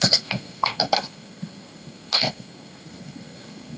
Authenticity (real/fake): fake